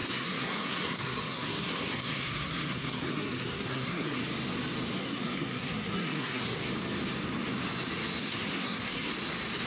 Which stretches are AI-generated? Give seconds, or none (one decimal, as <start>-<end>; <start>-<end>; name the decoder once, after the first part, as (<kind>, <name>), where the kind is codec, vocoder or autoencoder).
0.0-4.2 (codec, SNAC); 5.0-6.6; 8.2-9.1